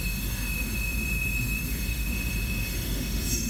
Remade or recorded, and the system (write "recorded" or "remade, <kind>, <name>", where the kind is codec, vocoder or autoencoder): remade, autoencoder, DAC-VAE